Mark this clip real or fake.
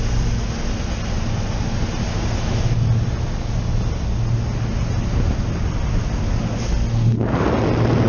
real